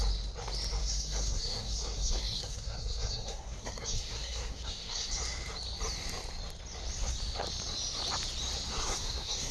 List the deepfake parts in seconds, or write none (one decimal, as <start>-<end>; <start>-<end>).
0.8-5.1; 8.7-9.5

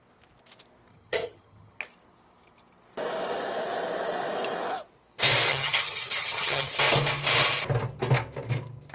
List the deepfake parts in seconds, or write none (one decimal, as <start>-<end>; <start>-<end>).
0.9-1.8; 5.5-6.7